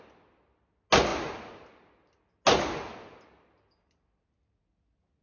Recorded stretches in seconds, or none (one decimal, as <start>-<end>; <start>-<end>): 0.0-5.2